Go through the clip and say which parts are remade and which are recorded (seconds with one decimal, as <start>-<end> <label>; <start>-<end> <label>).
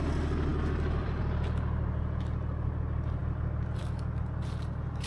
0.0-5.1 recorded